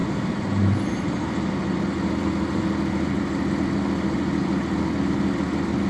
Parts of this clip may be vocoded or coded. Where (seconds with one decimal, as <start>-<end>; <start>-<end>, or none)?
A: none